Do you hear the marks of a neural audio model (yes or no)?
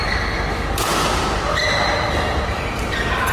yes